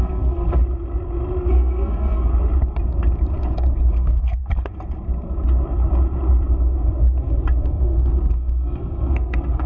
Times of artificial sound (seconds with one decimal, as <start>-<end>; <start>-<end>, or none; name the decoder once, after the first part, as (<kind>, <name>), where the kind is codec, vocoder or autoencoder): 0.0-0.6 (codec, SNAC); 1.5-2.3; 3.9-4.4; 7.6-9.7